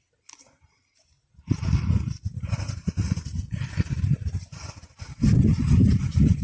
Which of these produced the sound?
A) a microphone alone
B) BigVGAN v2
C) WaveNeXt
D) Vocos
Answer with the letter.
A